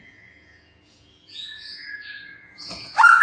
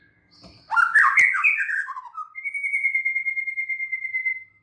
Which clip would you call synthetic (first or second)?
first